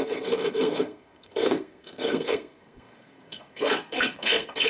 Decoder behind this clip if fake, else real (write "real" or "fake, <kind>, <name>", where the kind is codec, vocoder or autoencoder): fake, codec, SNAC